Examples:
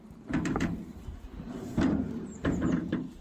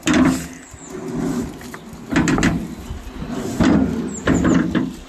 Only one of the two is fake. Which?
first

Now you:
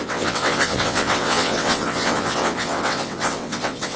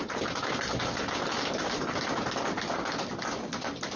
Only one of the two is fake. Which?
first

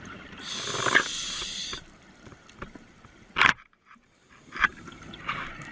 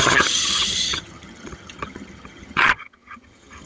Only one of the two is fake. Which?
second